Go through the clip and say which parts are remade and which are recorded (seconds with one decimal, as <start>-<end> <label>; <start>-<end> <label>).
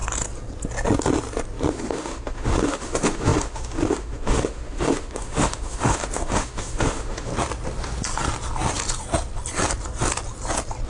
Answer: 0.0-1.7 recorded; 1.7-7.3 remade; 7.3-10.9 recorded